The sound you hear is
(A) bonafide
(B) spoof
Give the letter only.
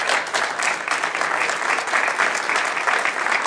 A